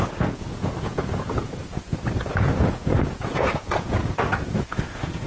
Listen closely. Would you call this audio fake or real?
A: fake